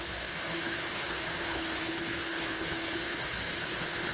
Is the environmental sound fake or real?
fake